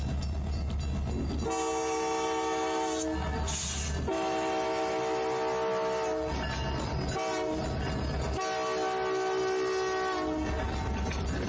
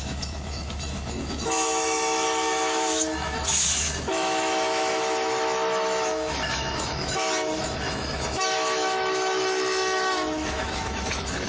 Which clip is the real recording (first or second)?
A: first